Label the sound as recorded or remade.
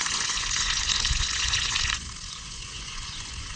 remade